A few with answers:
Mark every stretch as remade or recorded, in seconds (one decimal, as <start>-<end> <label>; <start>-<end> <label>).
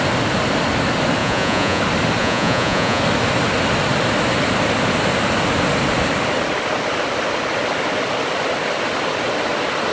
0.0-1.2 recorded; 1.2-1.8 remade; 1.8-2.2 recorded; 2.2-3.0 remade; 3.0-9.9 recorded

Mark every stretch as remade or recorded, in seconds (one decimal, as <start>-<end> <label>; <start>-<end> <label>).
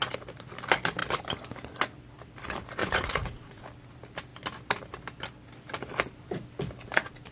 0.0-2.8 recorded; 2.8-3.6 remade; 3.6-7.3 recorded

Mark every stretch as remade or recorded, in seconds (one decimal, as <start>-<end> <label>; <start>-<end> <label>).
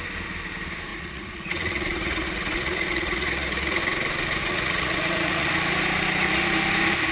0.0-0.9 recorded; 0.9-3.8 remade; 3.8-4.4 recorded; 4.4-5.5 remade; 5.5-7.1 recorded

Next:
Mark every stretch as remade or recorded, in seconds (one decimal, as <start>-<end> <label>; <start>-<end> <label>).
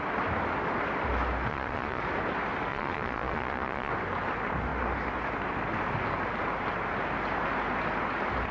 0.0-1.5 recorded; 1.5-2.0 remade; 2.0-2.7 recorded; 2.7-3.9 remade; 3.9-8.5 recorded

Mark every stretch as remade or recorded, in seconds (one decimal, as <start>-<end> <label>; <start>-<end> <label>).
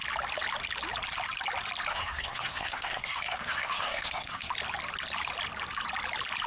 0.0-1.9 recorded; 1.9-4.5 remade; 4.5-6.5 recorded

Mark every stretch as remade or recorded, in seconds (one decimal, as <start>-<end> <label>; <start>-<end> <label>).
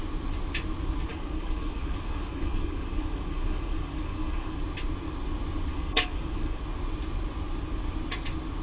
0.0-1.1 recorded; 1.1-4.6 remade; 4.6-5.7 recorded; 5.7-6.6 remade; 6.6-8.6 recorded